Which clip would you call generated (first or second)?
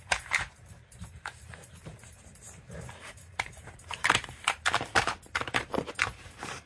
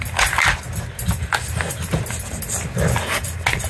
first